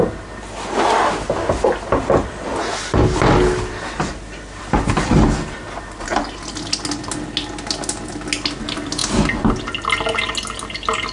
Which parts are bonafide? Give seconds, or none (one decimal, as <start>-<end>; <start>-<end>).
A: 0.0-11.1